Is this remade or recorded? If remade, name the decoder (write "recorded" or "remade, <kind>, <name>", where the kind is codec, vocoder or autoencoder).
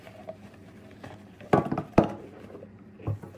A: recorded